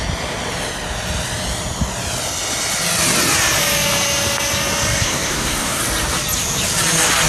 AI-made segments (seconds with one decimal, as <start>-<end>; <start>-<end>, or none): 5.0-5.8